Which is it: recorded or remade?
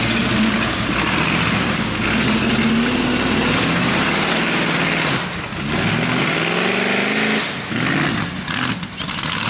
recorded